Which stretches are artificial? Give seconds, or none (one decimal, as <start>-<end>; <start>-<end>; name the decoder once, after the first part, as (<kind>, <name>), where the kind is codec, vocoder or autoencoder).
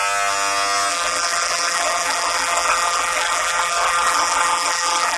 0.9-5.2 (vocoder, BigVGAN v2)